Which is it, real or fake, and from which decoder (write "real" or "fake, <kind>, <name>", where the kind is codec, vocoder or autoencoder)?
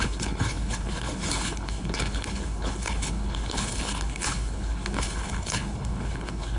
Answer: fake, codec, HILCodec